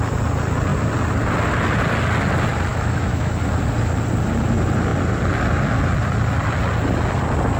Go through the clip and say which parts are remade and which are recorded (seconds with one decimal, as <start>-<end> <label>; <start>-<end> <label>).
0.0-2.7 recorded; 2.7-3.3 remade; 3.3-7.6 recorded